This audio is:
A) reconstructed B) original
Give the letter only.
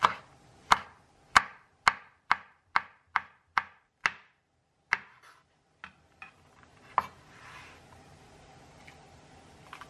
B